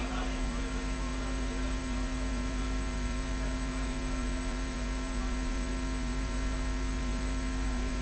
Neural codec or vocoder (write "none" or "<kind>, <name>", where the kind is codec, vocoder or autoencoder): vocoder, BigVGAN v2